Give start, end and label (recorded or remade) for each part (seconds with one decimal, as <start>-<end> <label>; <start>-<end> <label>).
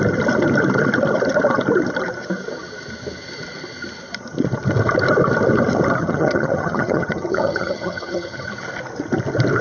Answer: 0.0-6.0 recorded; 6.0-8.5 remade; 8.5-9.6 recorded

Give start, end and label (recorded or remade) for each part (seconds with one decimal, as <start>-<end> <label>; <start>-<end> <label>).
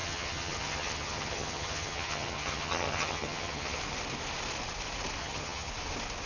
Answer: 0.0-3.8 remade; 3.8-5.2 recorded; 5.2-5.7 remade; 5.7-6.3 recorded